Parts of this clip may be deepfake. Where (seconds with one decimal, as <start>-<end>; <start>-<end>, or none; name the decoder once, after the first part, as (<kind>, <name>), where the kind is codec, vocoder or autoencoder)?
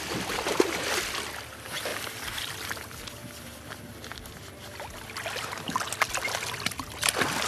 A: none